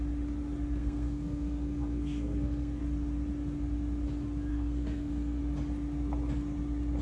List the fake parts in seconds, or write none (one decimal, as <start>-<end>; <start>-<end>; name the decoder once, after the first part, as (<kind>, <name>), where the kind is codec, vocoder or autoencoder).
0.8-2.8 (codec, SNAC); 4.5-5.4